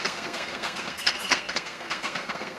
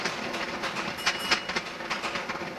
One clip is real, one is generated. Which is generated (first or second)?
first